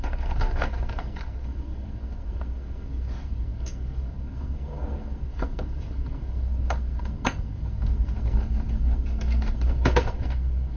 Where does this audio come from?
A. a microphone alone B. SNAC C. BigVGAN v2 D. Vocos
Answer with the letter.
B